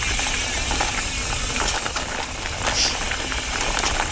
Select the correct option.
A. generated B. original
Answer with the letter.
B